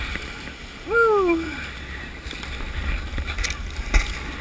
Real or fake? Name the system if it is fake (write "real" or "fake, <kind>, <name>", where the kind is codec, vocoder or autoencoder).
real